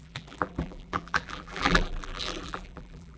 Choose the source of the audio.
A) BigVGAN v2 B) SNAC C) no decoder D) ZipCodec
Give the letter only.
A